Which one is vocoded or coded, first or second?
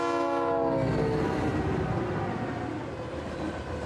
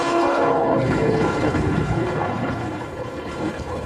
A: second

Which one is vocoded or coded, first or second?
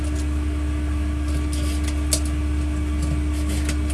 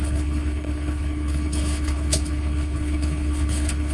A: second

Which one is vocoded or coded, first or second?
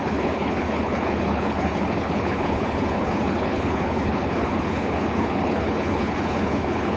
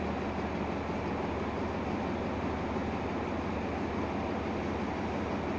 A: first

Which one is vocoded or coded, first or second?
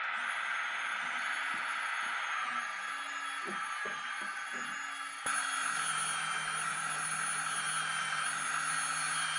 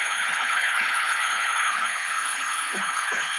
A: second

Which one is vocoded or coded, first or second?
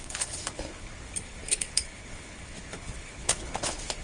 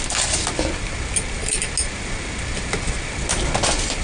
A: first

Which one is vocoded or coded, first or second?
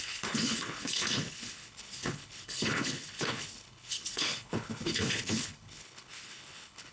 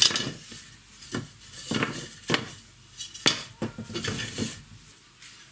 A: first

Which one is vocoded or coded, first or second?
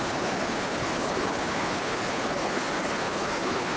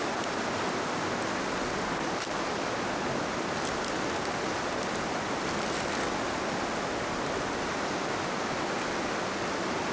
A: first